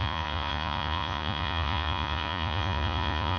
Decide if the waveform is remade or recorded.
remade